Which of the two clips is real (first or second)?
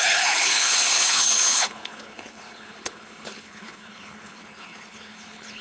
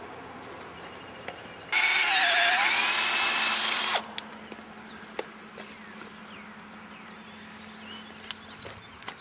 second